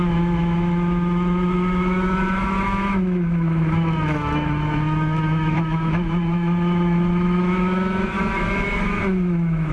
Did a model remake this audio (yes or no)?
yes